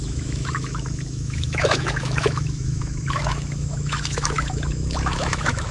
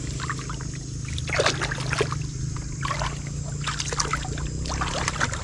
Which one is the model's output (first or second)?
first